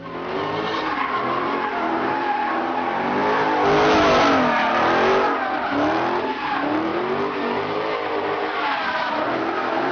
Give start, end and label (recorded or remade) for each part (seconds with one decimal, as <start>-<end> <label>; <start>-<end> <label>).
0.0-9.9 recorded